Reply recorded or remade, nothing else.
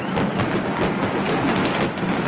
recorded